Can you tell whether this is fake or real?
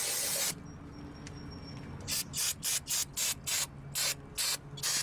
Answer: real